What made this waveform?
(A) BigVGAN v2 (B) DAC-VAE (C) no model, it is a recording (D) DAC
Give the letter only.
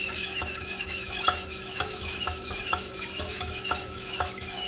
B